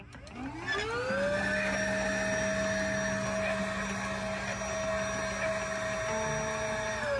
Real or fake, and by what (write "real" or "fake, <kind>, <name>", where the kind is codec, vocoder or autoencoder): real